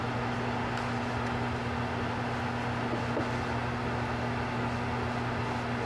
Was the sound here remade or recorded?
recorded